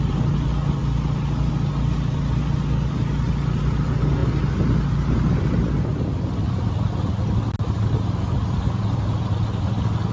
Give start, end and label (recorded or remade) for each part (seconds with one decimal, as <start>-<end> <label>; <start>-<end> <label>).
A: 0.0-10.1 recorded